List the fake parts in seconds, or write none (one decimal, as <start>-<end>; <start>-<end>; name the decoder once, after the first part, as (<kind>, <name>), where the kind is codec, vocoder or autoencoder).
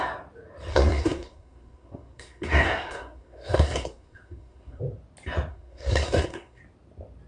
0.7-4.8 (codec, SNAC); 5.5-6.6